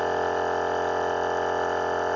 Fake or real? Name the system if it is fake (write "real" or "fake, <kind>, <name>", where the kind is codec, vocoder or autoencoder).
real